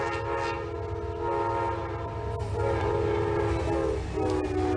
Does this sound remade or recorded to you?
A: recorded